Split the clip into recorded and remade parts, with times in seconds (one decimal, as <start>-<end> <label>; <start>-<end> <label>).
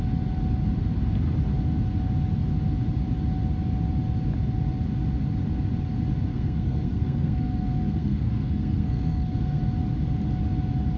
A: 0.0-6.3 recorded; 6.3-9.6 remade; 9.6-11.0 recorded